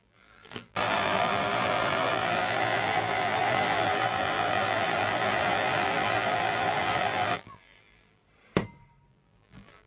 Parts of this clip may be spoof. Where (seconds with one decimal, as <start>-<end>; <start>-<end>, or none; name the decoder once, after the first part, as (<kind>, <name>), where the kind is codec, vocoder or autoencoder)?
0.0-8.2 (vocoder, BigVGAN v2); 9.1-9.9